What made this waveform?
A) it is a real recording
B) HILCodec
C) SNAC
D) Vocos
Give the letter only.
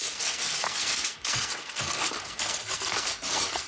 C